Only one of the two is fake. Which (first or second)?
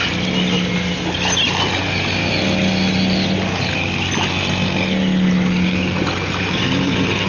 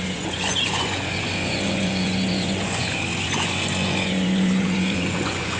second